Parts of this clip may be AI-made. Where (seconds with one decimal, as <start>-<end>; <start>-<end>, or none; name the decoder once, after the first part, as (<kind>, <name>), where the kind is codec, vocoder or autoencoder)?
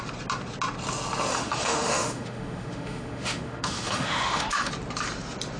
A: 1.3-4.7 (autoencoder, DAC-VAE)